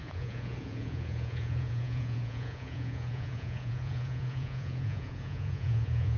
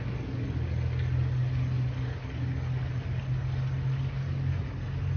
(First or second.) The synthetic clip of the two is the first